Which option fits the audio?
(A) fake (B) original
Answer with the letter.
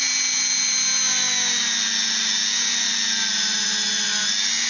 B